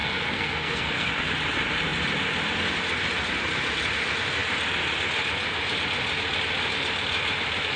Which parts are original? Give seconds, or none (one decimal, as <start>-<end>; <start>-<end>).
1.1-7.8